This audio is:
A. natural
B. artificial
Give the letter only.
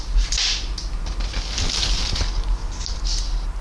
A